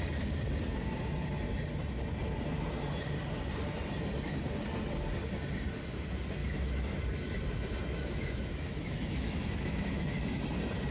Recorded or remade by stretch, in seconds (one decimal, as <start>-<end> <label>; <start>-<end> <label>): 0.0-6.4 recorded; 6.4-7.0 remade; 7.0-7.8 recorded; 7.8-10.4 remade; 10.4-10.9 recorded